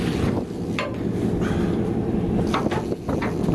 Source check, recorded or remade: recorded